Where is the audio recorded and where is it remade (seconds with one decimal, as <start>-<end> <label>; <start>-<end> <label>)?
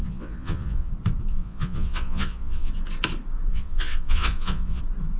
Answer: 0.0-0.9 remade; 0.9-1.3 recorded; 1.3-2.7 remade; 2.7-3.5 recorded; 3.5-4.8 remade; 4.8-5.2 recorded